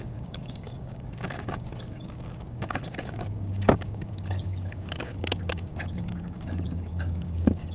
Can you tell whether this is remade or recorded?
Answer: remade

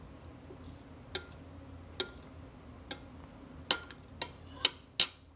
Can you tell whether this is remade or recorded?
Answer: recorded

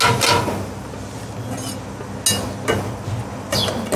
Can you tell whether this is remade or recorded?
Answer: recorded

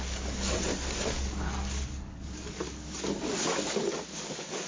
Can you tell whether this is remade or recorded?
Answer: remade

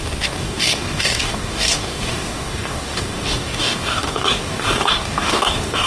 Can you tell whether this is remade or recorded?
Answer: remade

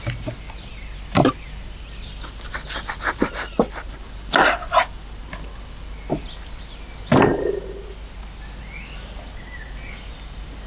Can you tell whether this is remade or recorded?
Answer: recorded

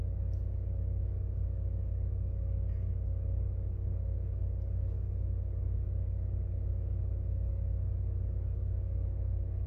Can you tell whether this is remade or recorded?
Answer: remade